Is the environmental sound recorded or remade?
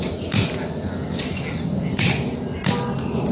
recorded